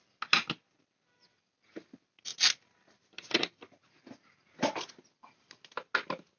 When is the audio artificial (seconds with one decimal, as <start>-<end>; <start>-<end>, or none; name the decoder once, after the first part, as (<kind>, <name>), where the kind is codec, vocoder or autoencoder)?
none